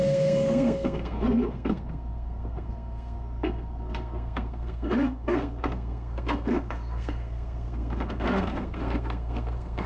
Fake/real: fake